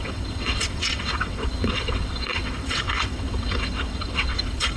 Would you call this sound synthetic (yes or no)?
yes